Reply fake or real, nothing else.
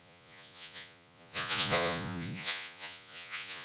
fake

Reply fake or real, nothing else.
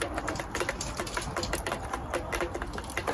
real